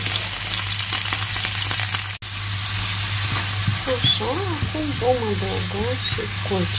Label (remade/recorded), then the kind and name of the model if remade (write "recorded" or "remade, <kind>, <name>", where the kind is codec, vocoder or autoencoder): recorded